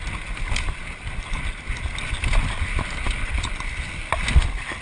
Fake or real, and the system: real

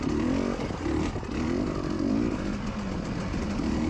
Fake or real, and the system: real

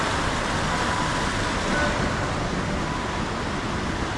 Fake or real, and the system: real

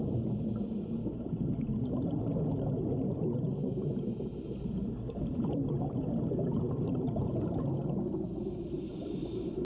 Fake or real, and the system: real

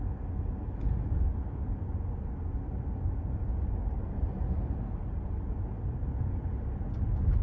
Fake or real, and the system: real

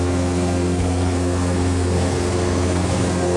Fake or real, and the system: fake, codec, SNAC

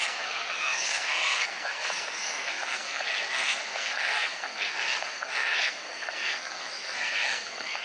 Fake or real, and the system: fake, codec, SNAC